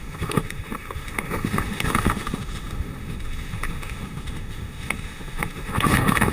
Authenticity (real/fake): fake